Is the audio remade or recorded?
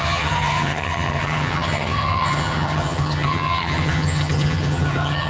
remade